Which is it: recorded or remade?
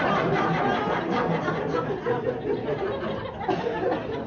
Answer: recorded